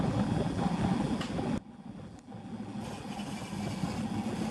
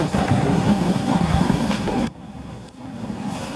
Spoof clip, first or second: second